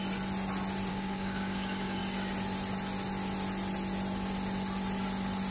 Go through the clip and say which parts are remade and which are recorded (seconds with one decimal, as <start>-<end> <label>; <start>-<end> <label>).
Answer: 0.0-0.9 recorded; 0.9-2.0 remade; 2.0-5.5 recorded